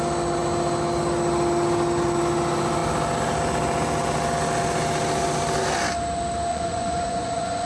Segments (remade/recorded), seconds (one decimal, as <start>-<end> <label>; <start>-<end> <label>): 0.0-6.5 recorded; 6.5-7.7 remade